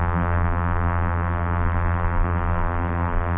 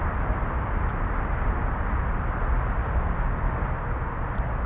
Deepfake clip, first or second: first